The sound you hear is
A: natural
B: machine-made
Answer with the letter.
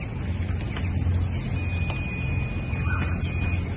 A